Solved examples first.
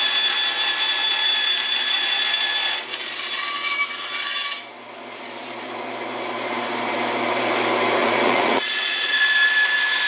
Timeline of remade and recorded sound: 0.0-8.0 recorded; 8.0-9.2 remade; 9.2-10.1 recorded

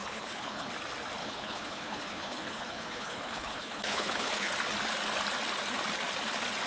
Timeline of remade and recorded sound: 0.0-0.7 remade; 0.7-1.2 recorded; 1.2-4.5 remade; 4.5-6.7 recorded

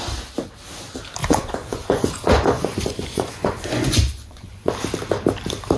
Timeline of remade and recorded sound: 0.0-1.2 recorded; 1.2-4.7 remade; 4.7-5.8 recorded

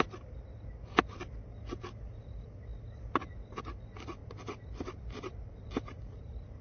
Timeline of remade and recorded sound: 0.0-6.6 recorded

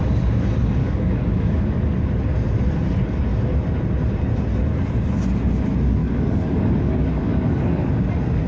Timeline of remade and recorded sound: 0.0-0.8 recorded; 0.8-1.8 remade; 1.8-6.0 recorded; 6.0-7.9 remade; 7.9-8.5 recorded

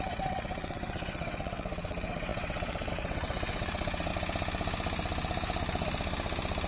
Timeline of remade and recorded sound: 0.0-4.1 remade; 4.1-6.7 recorded

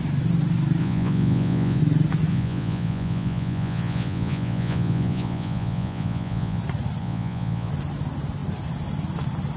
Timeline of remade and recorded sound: 0.0-0.8 recorded; 0.8-1.8 remade; 1.8-2.3 recorded; 2.3-6.6 remade; 6.6-7.0 recorded; 7.0-7.7 remade; 7.7-9.6 recorded

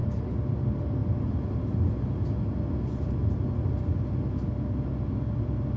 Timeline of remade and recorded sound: 0.0-5.8 recorded